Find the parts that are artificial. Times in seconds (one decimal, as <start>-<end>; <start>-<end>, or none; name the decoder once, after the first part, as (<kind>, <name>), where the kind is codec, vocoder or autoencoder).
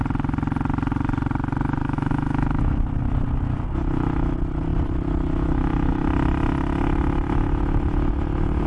1.8-2.6 (autoencoder, DAC-VAE)